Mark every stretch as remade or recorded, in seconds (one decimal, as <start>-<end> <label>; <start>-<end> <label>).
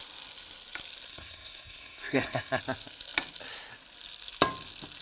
0.0-1.1 recorded; 1.1-2.6 remade; 2.6-5.0 recorded